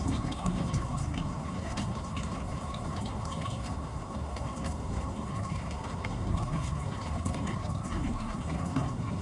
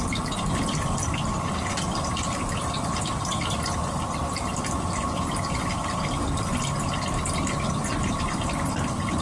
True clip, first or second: second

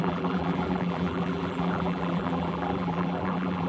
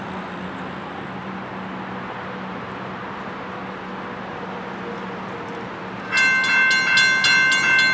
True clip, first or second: second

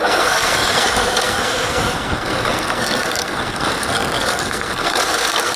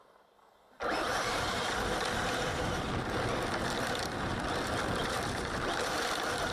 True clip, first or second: second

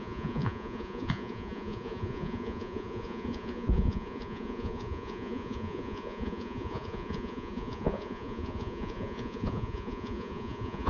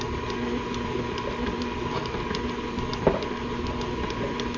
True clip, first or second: second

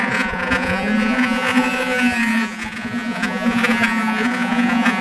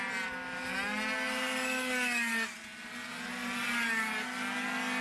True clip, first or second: second